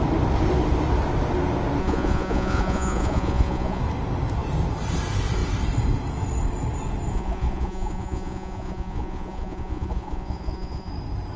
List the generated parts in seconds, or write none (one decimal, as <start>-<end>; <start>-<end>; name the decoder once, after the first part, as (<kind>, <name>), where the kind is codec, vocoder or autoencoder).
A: 1.8-3.8 (vocoder, Vocos); 7.1-10.9